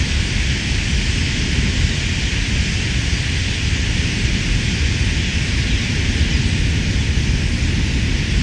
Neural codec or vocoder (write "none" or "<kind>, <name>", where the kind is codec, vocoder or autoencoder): none